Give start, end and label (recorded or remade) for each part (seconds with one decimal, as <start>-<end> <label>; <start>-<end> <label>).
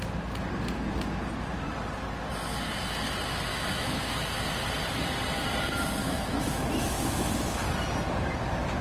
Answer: 0.0-3.5 recorded; 3.5-4.2 remade; 4.2-6.0 recorded; 6.0-7.7 remade; 7.7-8.8 recorded